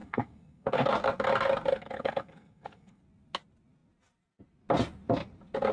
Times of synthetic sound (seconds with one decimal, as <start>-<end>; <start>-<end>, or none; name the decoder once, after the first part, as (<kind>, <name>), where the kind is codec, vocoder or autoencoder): 0.0-0.9 (codec, SNAC); 1.7-3.0